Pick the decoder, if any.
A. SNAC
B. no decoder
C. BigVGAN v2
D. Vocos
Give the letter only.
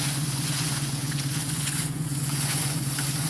D